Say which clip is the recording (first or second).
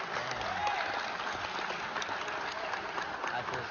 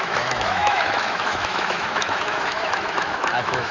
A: first